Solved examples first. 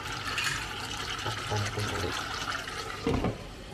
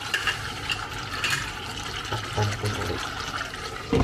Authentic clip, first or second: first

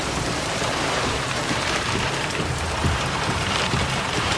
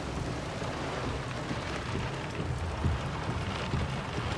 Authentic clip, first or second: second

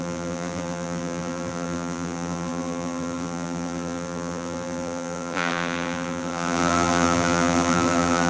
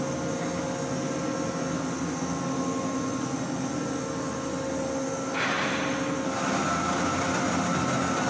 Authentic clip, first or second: second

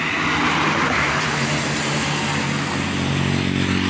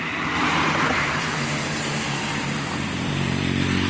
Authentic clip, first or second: first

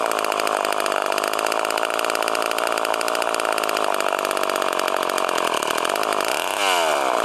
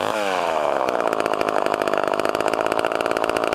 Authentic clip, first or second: first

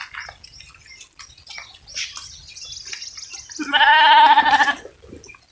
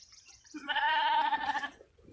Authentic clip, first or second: first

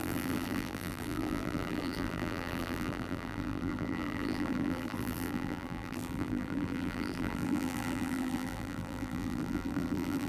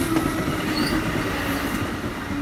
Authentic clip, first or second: second